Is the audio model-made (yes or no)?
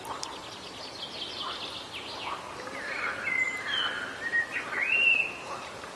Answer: no